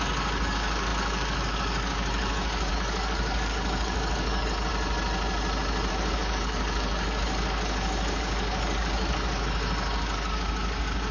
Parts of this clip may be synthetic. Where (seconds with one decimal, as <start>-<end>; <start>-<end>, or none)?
0.0-4.7; 5.9-11.1

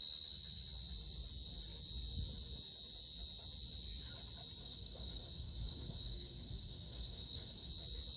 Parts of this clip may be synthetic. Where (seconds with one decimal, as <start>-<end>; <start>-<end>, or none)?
4.6-7.7

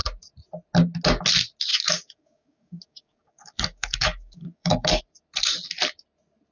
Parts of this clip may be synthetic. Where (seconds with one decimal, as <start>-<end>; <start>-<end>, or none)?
1.7-5.0